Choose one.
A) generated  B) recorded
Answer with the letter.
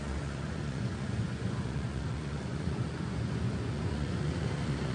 A